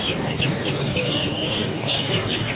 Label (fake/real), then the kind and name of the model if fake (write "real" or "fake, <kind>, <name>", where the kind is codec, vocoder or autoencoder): fake, codec, DAC